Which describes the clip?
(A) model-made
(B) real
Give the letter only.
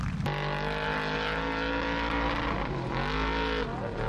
B